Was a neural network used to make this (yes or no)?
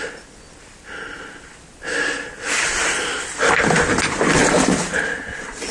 no